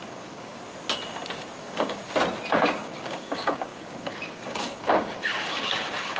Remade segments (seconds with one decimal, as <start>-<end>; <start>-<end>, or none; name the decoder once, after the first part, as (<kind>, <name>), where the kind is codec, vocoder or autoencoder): 0.0-0.5 (codec, DAC); 1.6-2.0; 2.6-6.2